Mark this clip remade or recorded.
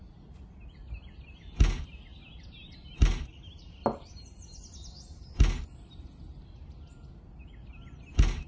recorded